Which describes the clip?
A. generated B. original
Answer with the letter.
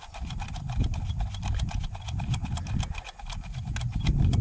B